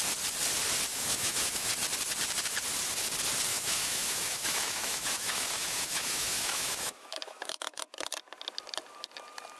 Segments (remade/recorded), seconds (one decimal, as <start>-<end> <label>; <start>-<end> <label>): 0.0-0.9 recorded; 0.9-1.7 remade; 1.7-3.5 recorded; 3.5-7.8 remade; 7.8-9.6 recorded